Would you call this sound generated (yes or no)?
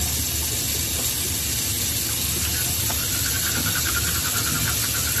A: no